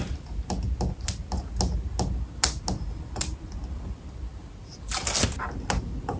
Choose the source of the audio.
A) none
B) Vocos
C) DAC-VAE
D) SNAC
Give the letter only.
A